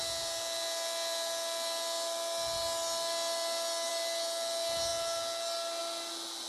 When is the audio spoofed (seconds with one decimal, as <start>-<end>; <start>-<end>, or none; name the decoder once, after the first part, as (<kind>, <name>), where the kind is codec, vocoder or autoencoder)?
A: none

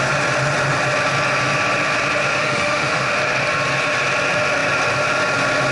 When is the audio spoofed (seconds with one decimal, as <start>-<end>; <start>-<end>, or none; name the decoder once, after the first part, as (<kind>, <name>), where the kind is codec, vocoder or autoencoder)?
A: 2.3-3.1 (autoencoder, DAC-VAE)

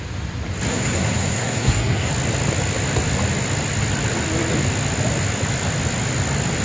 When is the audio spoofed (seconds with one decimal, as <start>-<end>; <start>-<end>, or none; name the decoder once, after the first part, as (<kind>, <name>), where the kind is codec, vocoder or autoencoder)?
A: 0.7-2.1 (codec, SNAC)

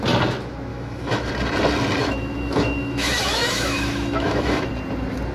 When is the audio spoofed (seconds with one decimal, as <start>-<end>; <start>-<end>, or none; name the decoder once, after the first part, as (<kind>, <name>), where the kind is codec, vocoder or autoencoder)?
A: 0.7-1.3 (autoencoder, DAC-VAE); 2.0-4.7

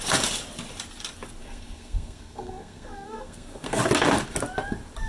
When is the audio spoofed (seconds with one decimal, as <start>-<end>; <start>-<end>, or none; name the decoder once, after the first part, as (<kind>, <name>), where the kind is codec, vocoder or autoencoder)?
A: 1.4-3.8 (codec, SNAC)

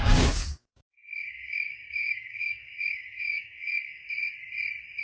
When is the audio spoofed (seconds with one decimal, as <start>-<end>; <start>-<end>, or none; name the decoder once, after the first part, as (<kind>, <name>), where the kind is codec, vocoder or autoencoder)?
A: 0.0-4.0 (codec, DAC)

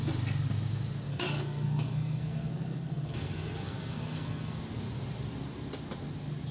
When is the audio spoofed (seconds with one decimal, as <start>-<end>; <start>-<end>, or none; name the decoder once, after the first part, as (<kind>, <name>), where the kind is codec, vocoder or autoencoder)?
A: 1.1-4.6 (codec, SNAC)

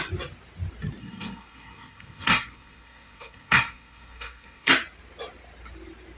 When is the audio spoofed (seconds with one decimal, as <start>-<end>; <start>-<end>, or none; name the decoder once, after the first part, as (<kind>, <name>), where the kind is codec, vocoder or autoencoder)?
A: 1.0-4.7 (codec, SNAC)